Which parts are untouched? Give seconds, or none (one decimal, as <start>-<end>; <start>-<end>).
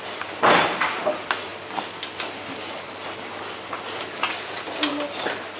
0.0-5.6